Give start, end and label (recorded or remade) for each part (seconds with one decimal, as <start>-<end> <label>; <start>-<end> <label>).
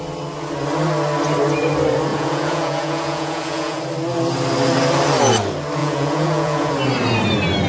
0.0-2.1 recorded; 2.1-3.8 remade; 3.8-5.8 recorded; 5.8-6.7 remade; 6.7-7.7 recorded